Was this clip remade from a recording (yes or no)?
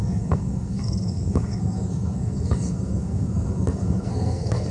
yes